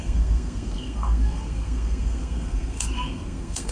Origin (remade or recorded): remade